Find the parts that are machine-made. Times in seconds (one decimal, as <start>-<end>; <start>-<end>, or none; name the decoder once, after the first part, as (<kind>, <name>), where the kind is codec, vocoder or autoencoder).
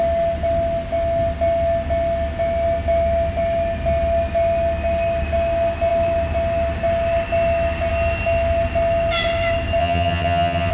9.8-10.7 (vocoder, HiFi-GAN)